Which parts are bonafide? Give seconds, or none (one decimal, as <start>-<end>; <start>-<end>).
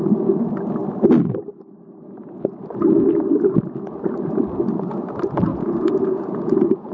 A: 0.0-5.5